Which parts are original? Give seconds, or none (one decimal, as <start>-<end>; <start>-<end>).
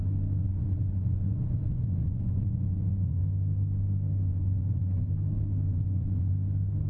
0.0-0.4; 3.2-4.3; 5.1-5.7; 6.3-6.9